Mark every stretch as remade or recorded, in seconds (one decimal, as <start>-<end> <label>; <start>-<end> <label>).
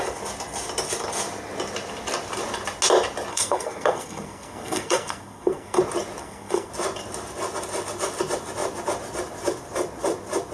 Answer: 0.0-3.3 recorded; 3.3-5.8 remade; 5.8-6.2 recorded; 6.2-6.7 remade; 6.7-10.5 recorded